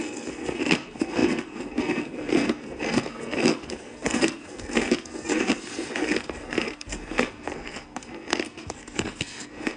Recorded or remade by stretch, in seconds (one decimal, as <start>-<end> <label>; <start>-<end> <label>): 0.0-9.8 remade